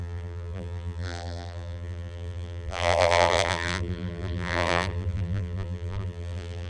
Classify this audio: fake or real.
fake